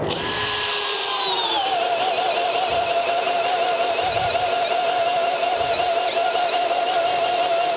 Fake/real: real